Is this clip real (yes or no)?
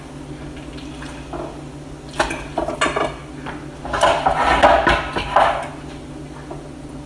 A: yes